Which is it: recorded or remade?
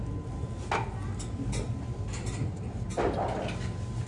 recorded